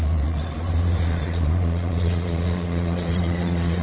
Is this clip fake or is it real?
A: fake